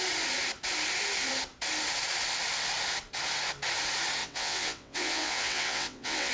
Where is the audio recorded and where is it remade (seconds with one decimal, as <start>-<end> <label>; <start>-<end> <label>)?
0.0-4.2 recorded; 4.2-6.3 remade